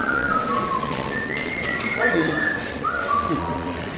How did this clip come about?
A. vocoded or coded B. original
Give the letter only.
A